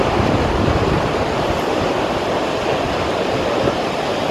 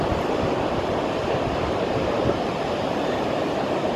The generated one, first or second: second